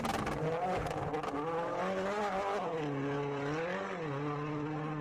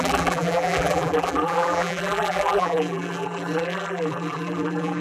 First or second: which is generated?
second